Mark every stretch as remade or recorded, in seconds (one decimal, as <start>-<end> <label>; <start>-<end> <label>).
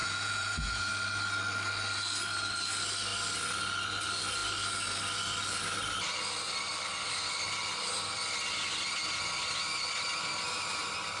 0.0-0.9 remade; 0.9-11.2 recorded